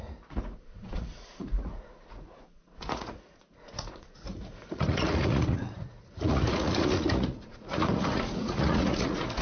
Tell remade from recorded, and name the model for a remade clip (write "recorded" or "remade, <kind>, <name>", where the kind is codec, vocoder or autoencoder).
remade, vocoder, Vocos